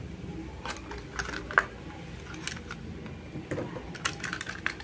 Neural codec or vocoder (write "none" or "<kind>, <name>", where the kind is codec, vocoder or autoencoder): none